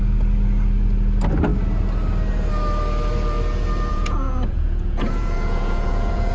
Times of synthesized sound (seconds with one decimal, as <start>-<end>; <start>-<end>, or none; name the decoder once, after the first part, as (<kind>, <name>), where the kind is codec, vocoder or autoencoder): 3.9-6.3 (vocoder, Vocos)